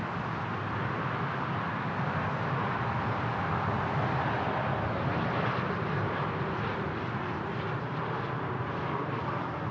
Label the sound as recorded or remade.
recorded